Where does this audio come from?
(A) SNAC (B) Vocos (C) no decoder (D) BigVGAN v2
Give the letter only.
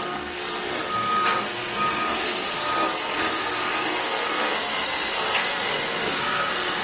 A